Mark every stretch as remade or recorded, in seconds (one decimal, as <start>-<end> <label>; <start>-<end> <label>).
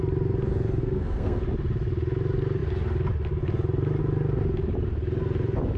0.0-0.8 recorded; 0.8-1.4 remade; 1.4-5.8 recorded